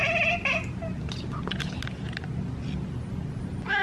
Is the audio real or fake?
real